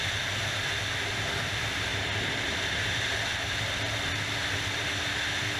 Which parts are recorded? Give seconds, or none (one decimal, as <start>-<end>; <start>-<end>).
0.0-5.6